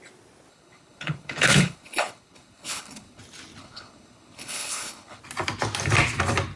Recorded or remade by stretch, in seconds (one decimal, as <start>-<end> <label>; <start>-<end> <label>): 0.0-0.5 recorded; 0.5-3.2 remade; 3.2-3.6 recorded; 3.6-5.2 remade; 5.2-6.6 recorded